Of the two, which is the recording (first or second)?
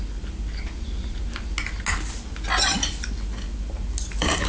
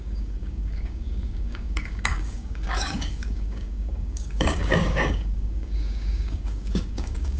first